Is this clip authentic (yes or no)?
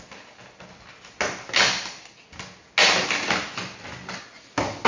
yes